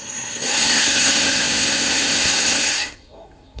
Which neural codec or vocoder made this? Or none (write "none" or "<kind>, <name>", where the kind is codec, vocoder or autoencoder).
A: codec, SNAC